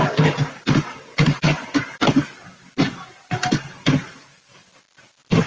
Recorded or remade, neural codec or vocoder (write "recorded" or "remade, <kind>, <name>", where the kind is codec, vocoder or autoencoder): recorded